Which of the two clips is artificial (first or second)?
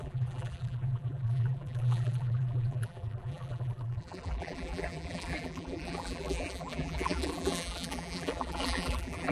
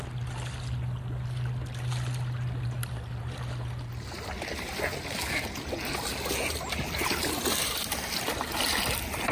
first